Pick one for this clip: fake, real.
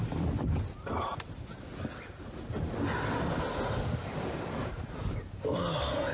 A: real